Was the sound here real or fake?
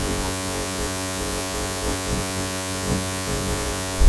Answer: fake